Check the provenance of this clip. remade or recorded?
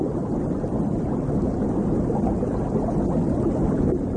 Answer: recorded